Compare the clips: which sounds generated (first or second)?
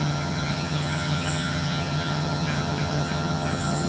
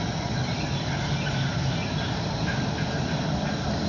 first